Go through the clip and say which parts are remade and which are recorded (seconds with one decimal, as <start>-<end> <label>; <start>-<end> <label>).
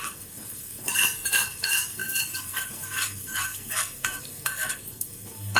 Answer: 0.0-5.6 remade